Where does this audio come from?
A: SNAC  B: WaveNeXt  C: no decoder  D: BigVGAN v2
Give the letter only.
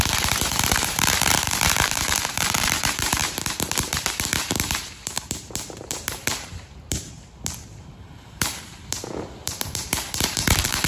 D